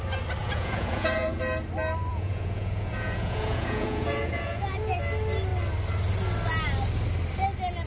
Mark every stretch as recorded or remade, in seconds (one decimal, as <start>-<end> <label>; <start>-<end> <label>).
0.0-0.4 recorded; 0.4-1.4 remade; 1.4-2.1 recorded; 2.1-5.0 remade; 5.0-7.9 recorded